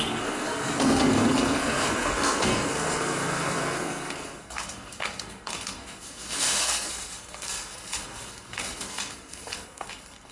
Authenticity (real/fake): fake